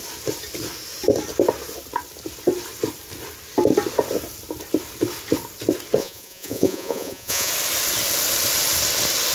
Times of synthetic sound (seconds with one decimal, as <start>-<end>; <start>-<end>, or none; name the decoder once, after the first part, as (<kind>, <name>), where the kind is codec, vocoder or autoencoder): 6.0-7.5 (vocoder, Vocos)